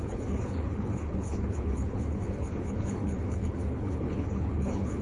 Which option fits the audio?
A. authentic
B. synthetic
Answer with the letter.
B